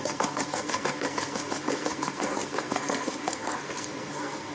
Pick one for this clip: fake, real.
fake